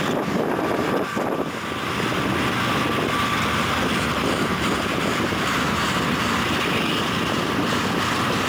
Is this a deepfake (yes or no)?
no